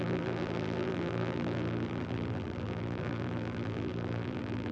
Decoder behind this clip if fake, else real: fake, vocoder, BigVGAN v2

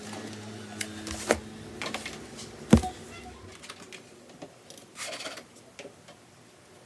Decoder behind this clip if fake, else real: real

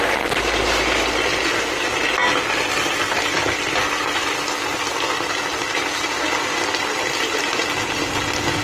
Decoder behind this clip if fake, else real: real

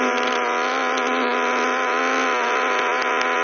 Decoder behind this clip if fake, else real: real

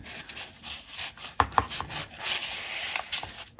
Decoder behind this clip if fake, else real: real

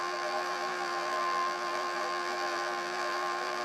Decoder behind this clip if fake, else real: fake, vocoder, BigVGAN v2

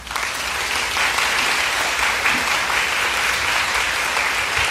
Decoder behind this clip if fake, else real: fake, vocoder, BigVGAN v2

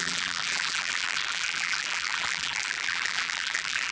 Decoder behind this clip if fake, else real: fake, vocoder, BigVGAN v2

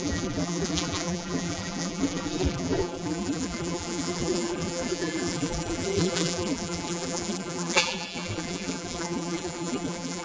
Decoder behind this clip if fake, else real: fake, vocoder, BigVGAN v2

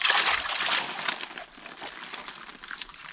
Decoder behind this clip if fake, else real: fake, vocoder, BigVGAN v2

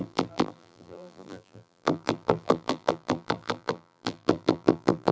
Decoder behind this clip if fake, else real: fake, vocoder, BigVGAN v2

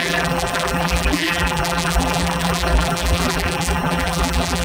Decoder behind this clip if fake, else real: fake, vocoder, BigVGAN v2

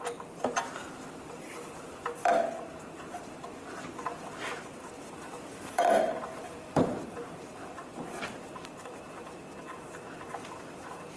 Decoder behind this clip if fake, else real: fake, vocoder, BigVGAN v2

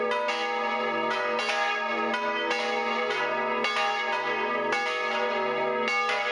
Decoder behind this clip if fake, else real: real